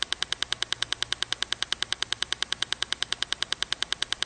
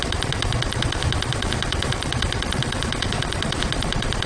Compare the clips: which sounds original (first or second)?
first